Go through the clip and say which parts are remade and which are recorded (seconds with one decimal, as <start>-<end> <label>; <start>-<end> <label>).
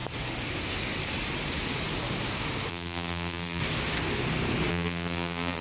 0.0-2.7 recorded; 2.7-3.6 remade; 3.6-4.7 recorded; 4.7-5.6 remade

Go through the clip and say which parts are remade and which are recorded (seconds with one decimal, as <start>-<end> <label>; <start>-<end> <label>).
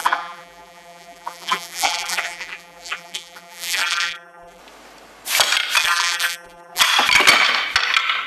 0.0-4.6 remade; 4.6-5.8 recorded; 5.8-6.8 remade; 6.8-8.3 recorded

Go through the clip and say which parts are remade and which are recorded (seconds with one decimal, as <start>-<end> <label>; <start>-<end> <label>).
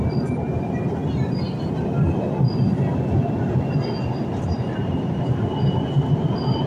0.0-4.3 recorded; 4.3-5.0 remade; 5.0-6.7 recorded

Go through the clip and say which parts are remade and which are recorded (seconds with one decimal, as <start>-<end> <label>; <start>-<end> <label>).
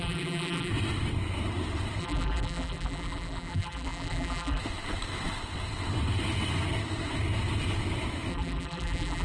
0.0-0.7 remade; 0.7-2.0 recorded; 2.0-4.6 remade; 4.6-8.3 recorded; 8.3-9.2 remade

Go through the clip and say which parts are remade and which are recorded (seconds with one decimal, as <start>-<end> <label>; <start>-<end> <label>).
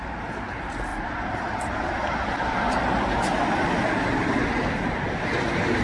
0.0-0.9 recorded; 0.9-4.4 remade; 4.4-5.8 recorded